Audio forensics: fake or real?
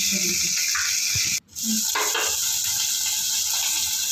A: real